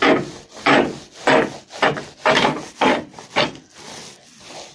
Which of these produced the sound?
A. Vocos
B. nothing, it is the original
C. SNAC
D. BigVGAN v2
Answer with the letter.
B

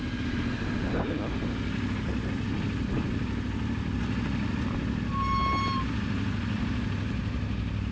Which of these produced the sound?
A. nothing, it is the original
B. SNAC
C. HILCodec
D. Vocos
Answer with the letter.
A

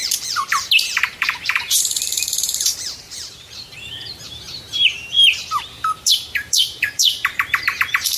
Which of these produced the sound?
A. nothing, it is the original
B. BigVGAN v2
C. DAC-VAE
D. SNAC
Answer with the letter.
B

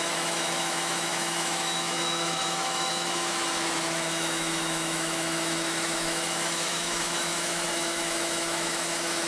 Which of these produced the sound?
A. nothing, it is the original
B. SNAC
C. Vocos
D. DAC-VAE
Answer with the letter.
D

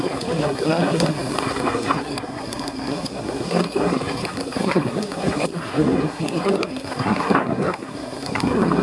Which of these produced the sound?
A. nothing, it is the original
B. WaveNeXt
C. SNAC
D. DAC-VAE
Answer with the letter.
C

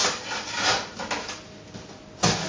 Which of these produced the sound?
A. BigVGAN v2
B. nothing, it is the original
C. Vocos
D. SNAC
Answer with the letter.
B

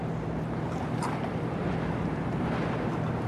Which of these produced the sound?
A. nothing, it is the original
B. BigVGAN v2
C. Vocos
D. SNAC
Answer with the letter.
B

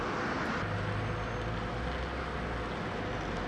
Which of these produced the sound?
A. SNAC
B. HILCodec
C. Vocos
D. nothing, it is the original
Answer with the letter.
D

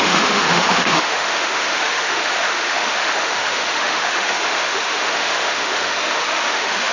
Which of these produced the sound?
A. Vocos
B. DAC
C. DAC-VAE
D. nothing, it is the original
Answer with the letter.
C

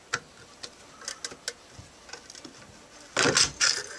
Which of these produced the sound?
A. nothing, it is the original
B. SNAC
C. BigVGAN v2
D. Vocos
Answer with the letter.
A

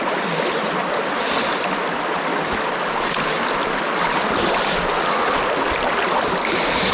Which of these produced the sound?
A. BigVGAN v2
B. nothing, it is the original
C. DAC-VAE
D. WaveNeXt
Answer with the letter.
B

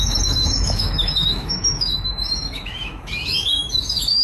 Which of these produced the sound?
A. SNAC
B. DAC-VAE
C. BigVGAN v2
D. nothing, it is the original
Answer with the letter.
B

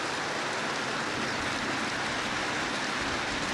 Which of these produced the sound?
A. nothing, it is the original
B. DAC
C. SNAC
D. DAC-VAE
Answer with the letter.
A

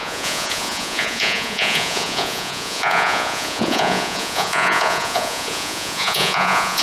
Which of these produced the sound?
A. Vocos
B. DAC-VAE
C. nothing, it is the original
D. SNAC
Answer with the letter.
A